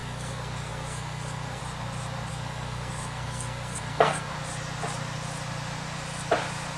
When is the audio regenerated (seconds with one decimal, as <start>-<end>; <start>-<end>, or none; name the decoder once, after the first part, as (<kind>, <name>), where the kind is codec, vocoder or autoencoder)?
0.0-1.6 (codec, SNAC); 2.3-4.3